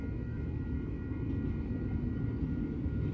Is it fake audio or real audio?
real